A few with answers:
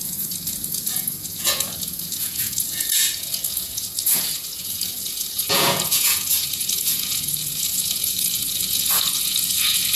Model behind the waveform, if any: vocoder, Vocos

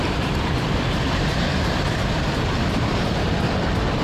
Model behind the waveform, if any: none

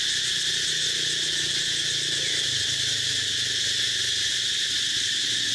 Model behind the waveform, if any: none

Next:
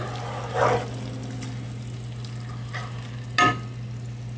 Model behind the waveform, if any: none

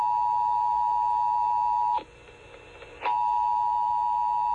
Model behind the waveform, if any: none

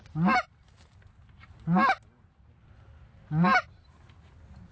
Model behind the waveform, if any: none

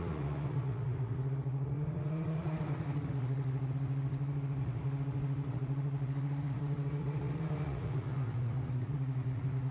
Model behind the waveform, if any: vocoder, Vocos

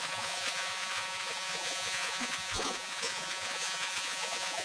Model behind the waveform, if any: vocoder, Vocos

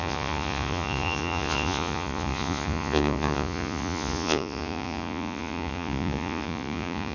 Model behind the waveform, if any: vocoder, Vocos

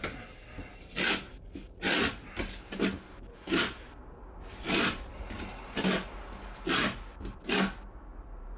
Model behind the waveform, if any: none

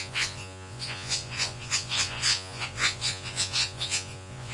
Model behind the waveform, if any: vocoder, Vocos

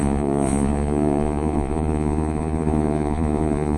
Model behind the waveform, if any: vocoder, Vocos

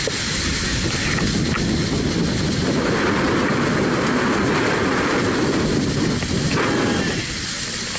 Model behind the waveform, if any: none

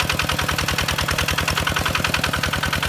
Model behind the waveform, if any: none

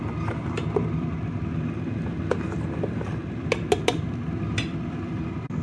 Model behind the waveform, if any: none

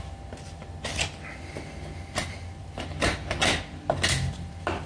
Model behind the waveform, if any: none